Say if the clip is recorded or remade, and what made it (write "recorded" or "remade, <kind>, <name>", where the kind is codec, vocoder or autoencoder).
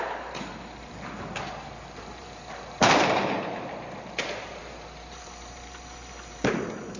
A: remade, vocoder, BigVGAN v2